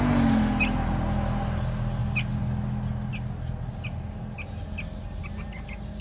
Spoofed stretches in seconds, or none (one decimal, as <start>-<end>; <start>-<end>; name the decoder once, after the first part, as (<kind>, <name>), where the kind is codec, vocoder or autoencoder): none